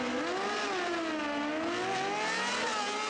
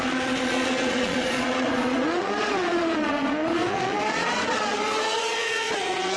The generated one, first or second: second